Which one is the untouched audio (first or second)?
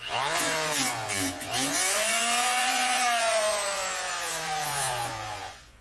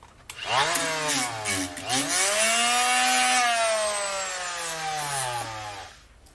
second